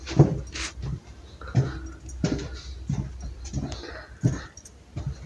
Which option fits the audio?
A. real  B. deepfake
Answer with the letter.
A